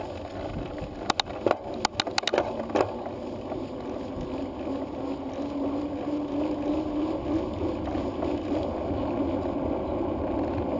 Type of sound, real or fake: real